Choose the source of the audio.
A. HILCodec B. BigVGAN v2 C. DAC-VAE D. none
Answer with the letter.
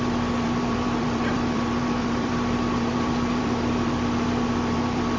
B